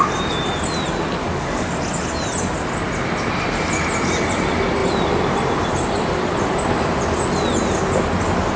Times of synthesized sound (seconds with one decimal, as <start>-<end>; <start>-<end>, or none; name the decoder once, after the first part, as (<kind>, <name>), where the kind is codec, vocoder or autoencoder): 1.2-1.7 (codec, DAC)